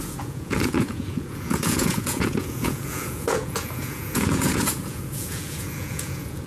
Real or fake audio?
fake